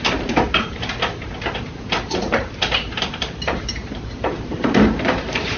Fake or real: fake